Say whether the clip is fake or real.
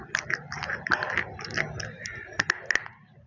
real